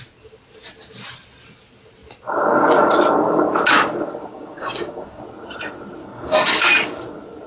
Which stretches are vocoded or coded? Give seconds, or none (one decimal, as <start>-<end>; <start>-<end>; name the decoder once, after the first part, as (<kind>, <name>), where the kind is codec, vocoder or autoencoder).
4.3-5.2 (codec, DAC); 6.0-6.7